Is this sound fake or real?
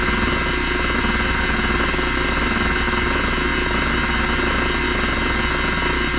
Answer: real